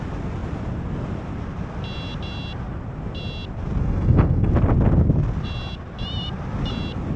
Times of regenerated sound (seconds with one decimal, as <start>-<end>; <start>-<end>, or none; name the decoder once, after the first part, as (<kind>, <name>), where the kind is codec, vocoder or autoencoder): 3.8-4.5 (codec, SNAC)